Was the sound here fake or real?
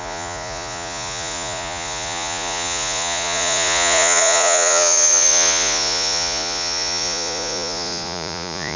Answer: fake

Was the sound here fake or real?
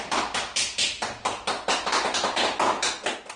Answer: real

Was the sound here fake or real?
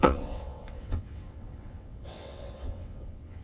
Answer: fake